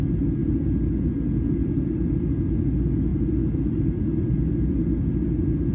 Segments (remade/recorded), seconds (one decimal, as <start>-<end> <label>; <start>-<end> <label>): 0.0-0.4 recorded; 0.4-2.2 remade; 2.2-3.1 recorded; 3.1-5.7 remade